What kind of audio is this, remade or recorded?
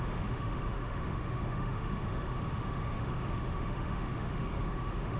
remade